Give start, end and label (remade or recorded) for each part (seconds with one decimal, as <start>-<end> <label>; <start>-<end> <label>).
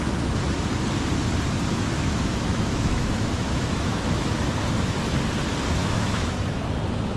0.0-1.7 recorded; 1.7-4.3 remade; 4.3-5.8 recorded; 5.8-6.6 remade; 6.6-7.2 recorded